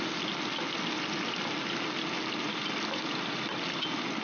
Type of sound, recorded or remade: recorded